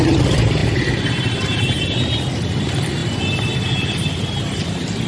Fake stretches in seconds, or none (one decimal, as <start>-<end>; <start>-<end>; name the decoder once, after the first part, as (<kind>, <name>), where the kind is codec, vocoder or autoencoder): 0.0-3.0 (vocoder, BigVGAN v2); 3.5-5.1